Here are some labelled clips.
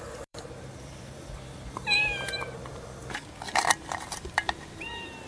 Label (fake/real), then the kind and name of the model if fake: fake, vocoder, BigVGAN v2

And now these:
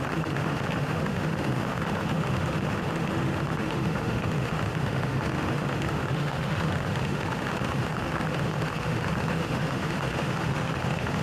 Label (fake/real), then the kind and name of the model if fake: fake, autoencoder, DAC-VAE